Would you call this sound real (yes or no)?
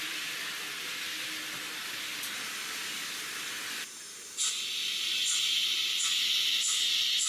yes